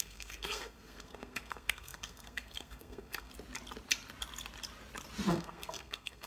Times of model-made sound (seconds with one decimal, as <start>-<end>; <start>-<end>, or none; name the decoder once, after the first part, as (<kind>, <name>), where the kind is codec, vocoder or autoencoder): 0.0-3.3 (codec, SNAC); 5.3-6.3